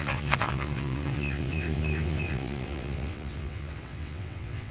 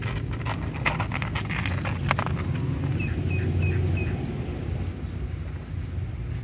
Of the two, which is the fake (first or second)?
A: first